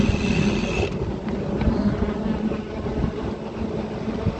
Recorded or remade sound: recorded